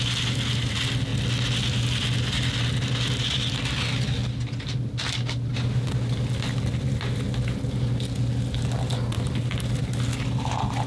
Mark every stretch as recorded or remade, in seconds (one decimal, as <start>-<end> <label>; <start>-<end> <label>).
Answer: 0.0-10.9 recorded